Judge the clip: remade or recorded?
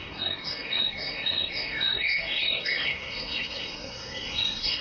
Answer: remade